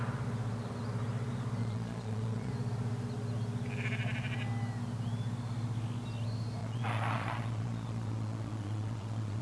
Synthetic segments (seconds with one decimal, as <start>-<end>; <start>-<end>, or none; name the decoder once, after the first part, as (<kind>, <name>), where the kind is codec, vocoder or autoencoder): 1.6-2.5 (vocoder, Vocos); 6.6-9.4